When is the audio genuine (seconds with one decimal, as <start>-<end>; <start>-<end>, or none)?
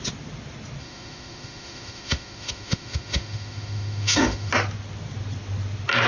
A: 0.0-0.8; 4.5-6.1